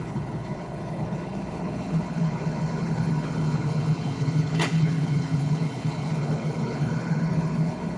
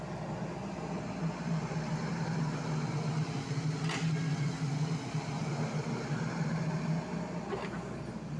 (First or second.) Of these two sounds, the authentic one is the second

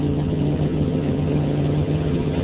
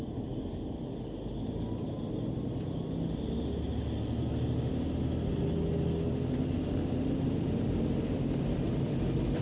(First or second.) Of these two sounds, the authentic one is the second